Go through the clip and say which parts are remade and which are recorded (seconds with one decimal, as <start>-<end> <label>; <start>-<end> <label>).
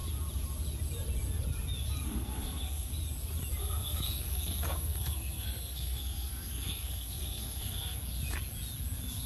0.0-2.1 recorded; 2.1-2.9 remade; 2.9-3.6 recorded; 3.6-8.0 remade; 8.0-9.3 recorded